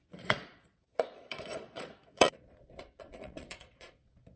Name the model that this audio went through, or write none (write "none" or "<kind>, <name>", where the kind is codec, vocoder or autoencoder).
vocoder, Vocos